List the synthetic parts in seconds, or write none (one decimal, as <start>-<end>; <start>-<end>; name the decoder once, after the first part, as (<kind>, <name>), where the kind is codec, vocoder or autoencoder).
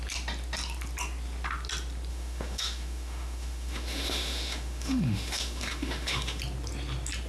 2.1-6.4 (autoencoder, DAC-VAE)